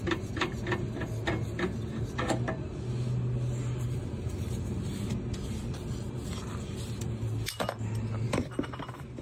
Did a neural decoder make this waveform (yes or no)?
no